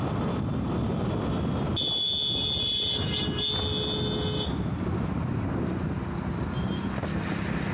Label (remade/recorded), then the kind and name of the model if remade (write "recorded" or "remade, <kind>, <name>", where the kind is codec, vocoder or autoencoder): recorded